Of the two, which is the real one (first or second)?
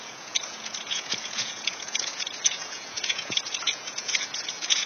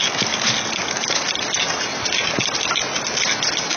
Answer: second